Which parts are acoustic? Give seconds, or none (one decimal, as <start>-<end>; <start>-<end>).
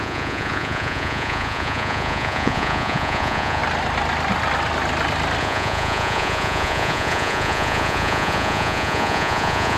3.6-5.4